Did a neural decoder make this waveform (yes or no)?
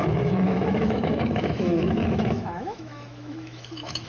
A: yes